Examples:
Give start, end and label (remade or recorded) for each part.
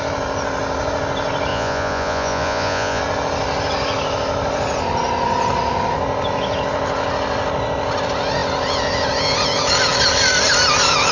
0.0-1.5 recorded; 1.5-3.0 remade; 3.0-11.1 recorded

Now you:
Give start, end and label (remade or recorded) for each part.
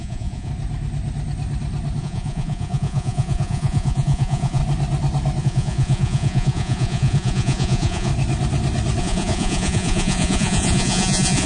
0.0-0.5 remade; 0.5-2.0 recorded; 2.0-4.6 remade; 4.6-5.4 recorded; 5.4-8.1 remade; 8.1-9.0 recorded; 9.0-11.5 remade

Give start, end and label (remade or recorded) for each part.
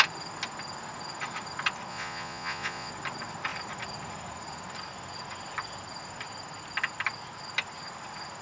0.0-1.9 recorded; 1.9-2.9 remade; 2.9-8.4 recorded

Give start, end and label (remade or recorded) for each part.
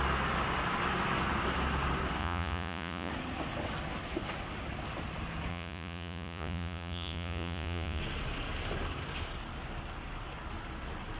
0.0-2.2 recorded; 2.2-3.1 remade; 3.1-5.5 recorded; 5.5-8.0 remade; 8.0-11.2 recorded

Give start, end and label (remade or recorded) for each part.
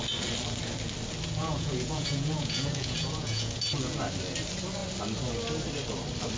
0.0-1.4 recorded; 1.4-3.6 remade; 3.6-6.4 recorded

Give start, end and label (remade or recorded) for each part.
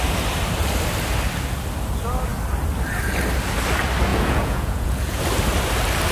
0.0-4.1 recorded; 4.1-5.2 remade; 5.2-6.1 recorded